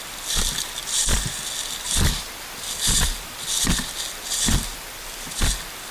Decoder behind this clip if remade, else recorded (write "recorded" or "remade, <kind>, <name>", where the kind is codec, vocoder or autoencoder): recorded